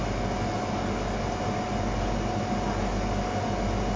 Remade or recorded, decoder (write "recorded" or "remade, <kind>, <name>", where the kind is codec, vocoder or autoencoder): recorded